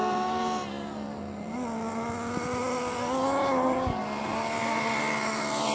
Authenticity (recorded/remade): recorded